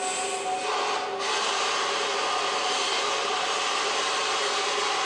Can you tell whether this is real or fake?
real